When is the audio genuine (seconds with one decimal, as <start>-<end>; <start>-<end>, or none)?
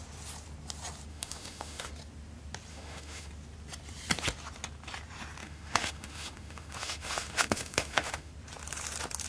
0.0-1.1; 1.9-2.7; 3.3-5.4; 8.3-9.3